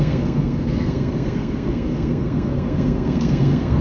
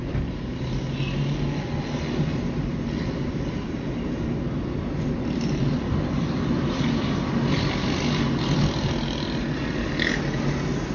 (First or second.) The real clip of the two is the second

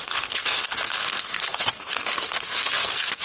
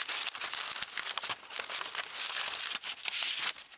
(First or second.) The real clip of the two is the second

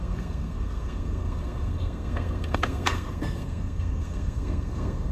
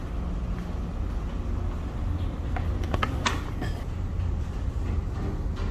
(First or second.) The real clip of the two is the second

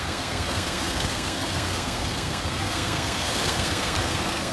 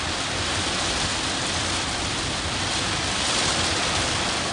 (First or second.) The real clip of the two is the second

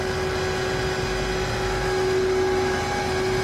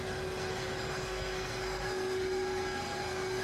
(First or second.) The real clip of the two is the first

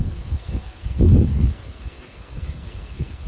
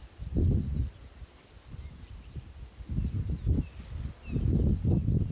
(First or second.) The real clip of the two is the second